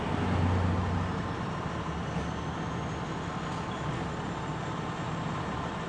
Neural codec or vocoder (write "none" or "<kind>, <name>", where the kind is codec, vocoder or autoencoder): none